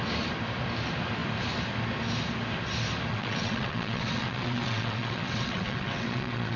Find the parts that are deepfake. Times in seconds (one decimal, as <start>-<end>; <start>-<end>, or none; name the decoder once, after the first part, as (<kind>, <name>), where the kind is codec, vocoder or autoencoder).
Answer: 3.1-6.6 (vocoder, WaveNeXt)